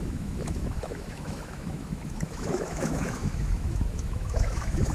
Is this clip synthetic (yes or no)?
yes